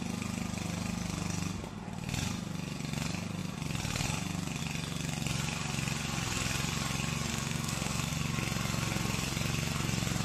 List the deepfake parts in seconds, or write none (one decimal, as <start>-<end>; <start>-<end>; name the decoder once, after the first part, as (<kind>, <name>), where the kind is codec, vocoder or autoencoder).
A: 7.3-8.1 (codec, SNAC)